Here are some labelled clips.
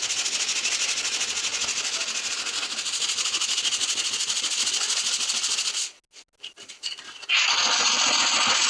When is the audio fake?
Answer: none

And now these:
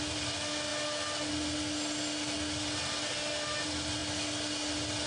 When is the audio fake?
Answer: none

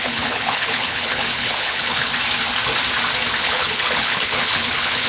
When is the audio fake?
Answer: 0.0-2.1 (codec, HILCodec); 3.4-5.1

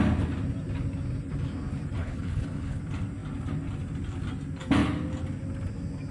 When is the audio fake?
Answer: 2.0-2.8 (codec, HILCodec)

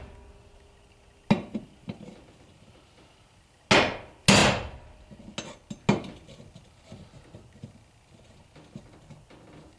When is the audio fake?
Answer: none

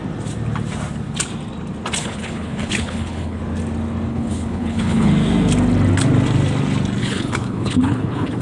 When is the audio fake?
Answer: 2.0-3.4 (codec, HILCodec); 4.1-5.1; 7.0-8.4

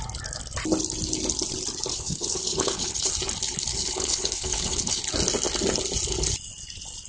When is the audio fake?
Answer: 1.9-3.1 (codec, HILCodec); 3.7-5.0

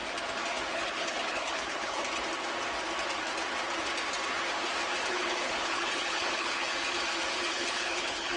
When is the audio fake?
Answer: 0.7-2.0 (codec, HILCodec); 5.1-6.7; 7.5-8.4